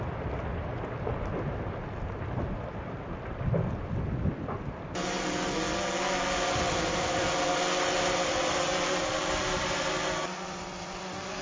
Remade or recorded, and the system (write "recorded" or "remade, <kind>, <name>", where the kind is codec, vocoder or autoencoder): recorded